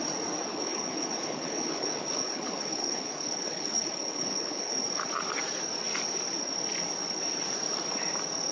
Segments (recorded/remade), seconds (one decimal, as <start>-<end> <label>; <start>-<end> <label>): 0.0-0.5 recorded; 0.5-4.8 remade; 4.8-8.5 recorded